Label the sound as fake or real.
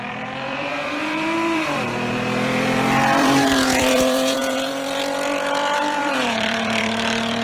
fake